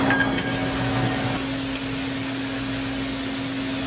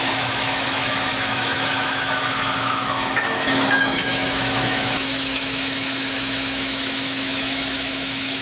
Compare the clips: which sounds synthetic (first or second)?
second